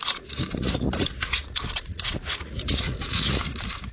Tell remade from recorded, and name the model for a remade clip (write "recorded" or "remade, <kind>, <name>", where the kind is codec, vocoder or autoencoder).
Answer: remade, vocoder, Vocos